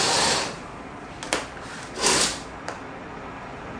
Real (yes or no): yes